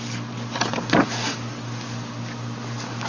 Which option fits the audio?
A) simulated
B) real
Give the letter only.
B